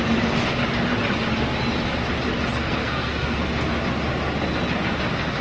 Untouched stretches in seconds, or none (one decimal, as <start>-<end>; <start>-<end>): 0.0-2.6; 3.4-5.4